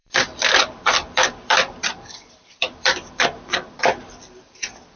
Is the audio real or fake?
fake